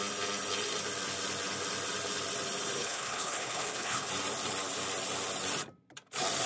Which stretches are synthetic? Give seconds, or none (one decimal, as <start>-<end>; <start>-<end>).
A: 2.8-4.1